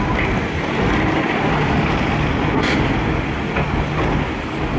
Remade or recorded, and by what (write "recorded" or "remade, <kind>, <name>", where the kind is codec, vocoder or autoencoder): recorded